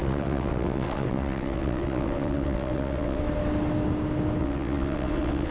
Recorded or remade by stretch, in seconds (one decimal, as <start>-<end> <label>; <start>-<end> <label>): 0.0-3.2 remade; 3.2-4.4 recorded; 4.4-5.5 remade